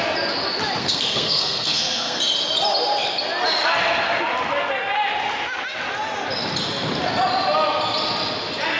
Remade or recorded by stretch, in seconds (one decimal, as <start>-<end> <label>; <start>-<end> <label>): 0.0-0.8 recorded; 0.8-2.2 remade; 2.2-8.8 recorded